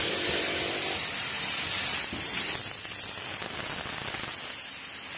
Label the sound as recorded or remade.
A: recorded